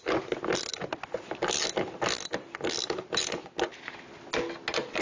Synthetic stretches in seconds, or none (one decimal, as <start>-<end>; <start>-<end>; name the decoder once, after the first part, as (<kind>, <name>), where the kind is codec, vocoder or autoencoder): none